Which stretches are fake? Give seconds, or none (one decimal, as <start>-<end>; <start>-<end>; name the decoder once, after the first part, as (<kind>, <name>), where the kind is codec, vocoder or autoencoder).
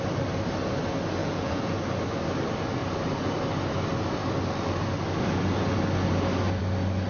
1.2-1.8 (vocoder, Vocos)